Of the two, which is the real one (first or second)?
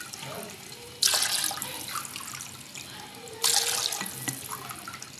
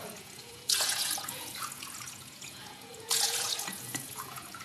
first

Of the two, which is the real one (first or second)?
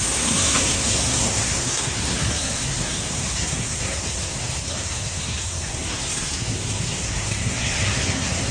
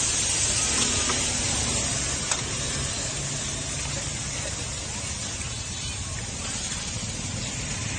second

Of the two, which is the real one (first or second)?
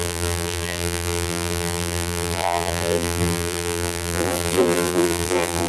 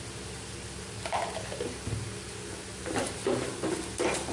second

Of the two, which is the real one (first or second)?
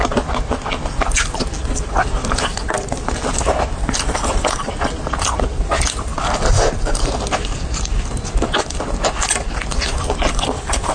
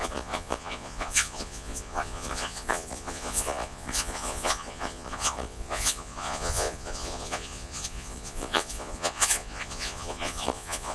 first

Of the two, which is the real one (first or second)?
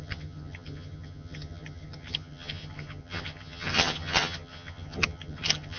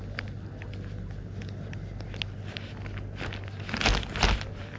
second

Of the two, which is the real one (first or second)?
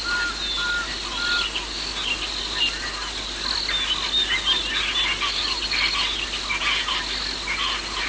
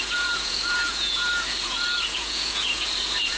first